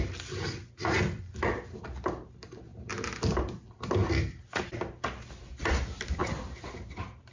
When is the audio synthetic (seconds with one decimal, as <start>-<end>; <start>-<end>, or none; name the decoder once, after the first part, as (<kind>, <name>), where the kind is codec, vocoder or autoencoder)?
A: 6.2-7.3 (vocoder, BigVGAN v2)